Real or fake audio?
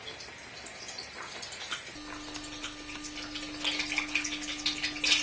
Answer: real